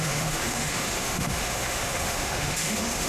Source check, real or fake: fake